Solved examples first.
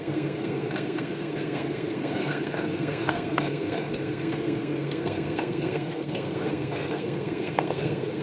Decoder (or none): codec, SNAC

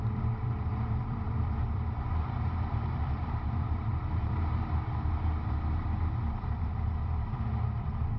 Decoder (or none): vocoder, BigVGAN v2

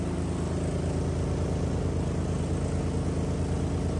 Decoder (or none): none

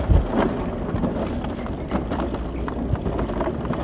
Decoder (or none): none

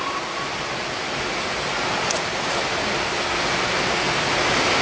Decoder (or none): none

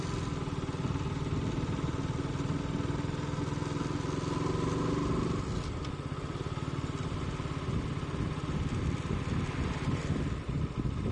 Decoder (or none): none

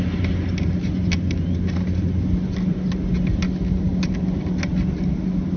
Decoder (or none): none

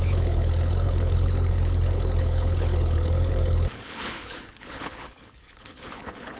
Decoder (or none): codec, HILCodec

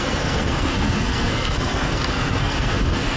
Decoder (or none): codec, SNAC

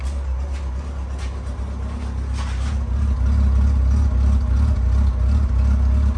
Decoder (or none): none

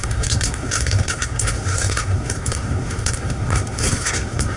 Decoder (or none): codec, SNAC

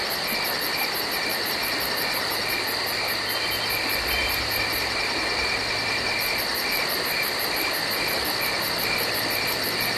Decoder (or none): none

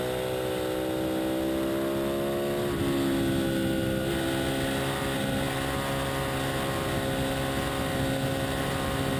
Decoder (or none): none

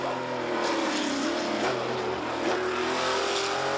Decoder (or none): none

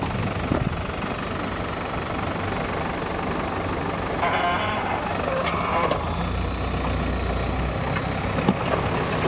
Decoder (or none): none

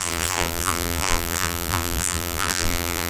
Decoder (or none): vocoder, BigVGAN v2